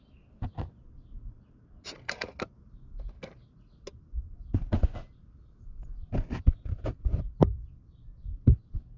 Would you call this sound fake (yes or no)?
no